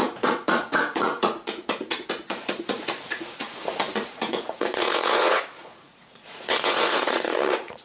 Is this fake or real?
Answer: fake